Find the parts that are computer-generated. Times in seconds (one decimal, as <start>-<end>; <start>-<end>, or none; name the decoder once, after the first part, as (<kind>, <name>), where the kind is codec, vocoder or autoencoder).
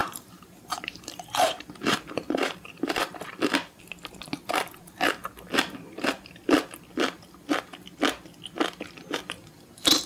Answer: 0.0-3.2 (vocoder, BigVGAN v2)